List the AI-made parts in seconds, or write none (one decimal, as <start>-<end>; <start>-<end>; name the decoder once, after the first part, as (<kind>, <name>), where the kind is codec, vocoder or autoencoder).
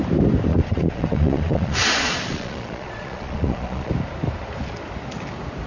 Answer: 0.5-3.9 (vocoder, Vocos)